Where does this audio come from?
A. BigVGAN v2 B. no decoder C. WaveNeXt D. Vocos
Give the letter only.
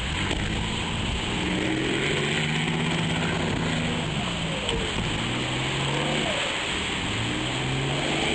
B